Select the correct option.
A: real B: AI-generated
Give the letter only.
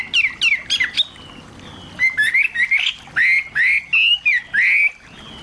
A